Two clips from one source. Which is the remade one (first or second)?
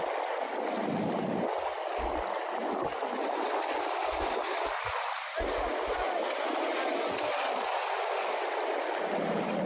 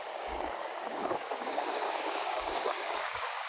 second